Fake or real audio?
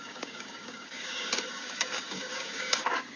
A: fake